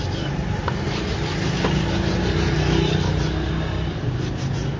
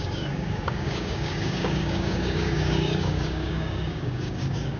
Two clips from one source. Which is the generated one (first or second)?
second